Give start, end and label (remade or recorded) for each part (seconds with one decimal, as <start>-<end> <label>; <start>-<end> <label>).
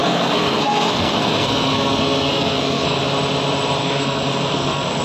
0.0-3.0 remade; 3.0-3.8 recorded; 3.8-5.0 remade